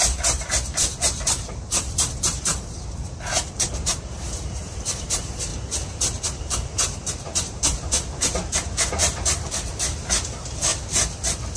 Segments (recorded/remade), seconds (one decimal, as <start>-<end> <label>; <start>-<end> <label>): 0.0-5.5 remade; 5.5-6.2 recorded; 6.2-10.7 remade; 10.7-11.6 recorded